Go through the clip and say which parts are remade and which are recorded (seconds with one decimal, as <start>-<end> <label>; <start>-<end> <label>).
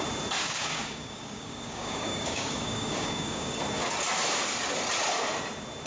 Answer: 0.0-0.4 recorded; 0.4-3.6 remade; 3.6-5.9 recorded